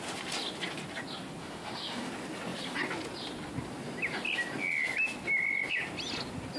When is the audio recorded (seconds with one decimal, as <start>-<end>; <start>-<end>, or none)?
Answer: 0.0-1.4; 2.1-6.6